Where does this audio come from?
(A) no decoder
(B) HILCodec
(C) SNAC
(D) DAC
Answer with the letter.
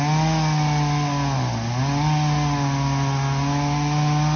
A